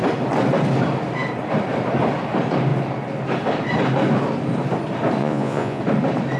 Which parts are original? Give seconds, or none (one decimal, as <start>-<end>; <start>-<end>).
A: 0.0-5.2; 5.8-6.4